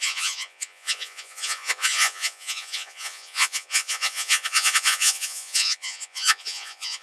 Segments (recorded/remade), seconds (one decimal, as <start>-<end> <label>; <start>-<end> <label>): 0.0-7.0 remade